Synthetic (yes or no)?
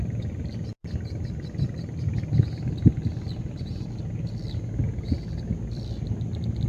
yes